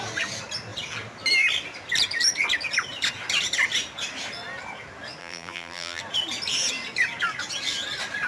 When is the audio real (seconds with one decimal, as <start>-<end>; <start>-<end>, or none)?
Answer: 0.0-5.2; 6.0-8.3

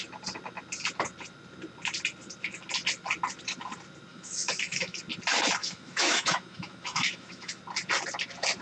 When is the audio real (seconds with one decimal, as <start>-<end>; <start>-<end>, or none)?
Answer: 0.0-4.1; 5.0-5.6; 7.6-8.6

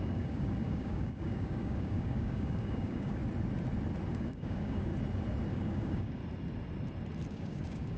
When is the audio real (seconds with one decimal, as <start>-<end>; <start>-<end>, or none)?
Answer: 3.2-4.1; 4.9-5.5; 6.2-7.3

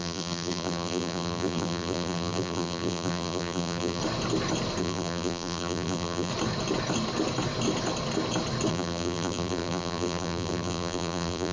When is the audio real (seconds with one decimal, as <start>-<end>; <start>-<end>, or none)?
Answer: 4.0-4.8; 6.3-8.7

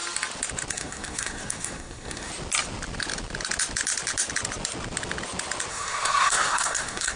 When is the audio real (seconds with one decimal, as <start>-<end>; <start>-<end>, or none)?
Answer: 0.0-0.7; 2.3-5.7